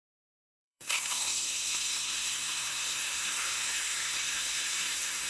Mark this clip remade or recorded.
remade